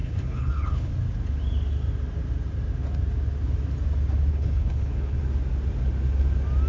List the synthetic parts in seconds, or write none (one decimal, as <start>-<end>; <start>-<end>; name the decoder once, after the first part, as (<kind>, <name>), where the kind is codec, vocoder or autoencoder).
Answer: 0.0-0.9 (codec, HILCodec); 4.3-5.2